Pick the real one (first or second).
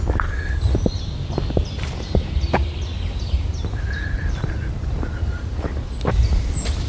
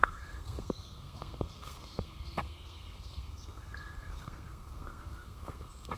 first